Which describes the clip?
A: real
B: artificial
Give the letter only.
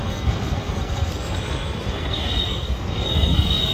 B